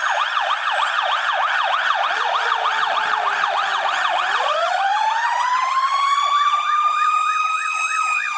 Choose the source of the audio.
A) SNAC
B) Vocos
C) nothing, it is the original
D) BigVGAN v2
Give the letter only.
B